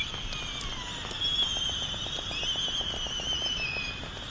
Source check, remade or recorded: recorded